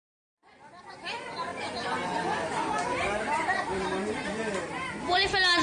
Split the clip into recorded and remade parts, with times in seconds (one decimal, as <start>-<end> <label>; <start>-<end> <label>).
0.0-5.6 recorded